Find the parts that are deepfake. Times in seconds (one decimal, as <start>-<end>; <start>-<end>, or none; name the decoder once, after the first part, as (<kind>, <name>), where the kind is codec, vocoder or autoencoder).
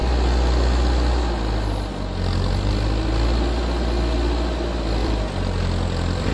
5.0-6.3 (vocoder, BigVGAN v2)